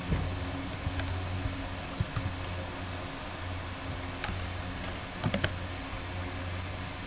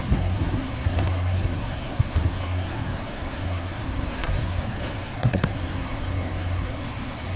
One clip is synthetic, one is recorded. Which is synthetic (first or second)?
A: second